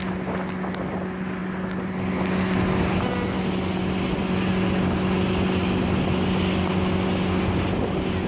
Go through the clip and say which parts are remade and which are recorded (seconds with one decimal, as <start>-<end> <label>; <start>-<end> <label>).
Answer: 0.0-8.3 recorded